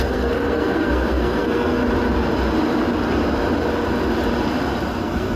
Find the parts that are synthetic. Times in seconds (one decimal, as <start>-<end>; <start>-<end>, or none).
0.0-1.8; 5.0-5.4